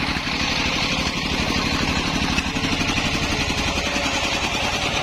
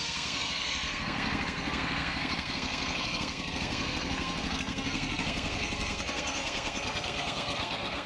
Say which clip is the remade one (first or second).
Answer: second